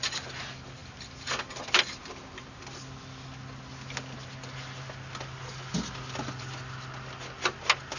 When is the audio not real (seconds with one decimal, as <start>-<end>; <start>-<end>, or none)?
none